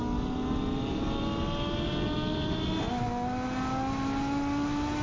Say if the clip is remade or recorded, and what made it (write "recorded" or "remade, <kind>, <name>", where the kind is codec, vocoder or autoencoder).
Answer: recorded